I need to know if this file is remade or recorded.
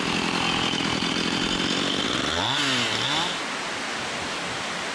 recorded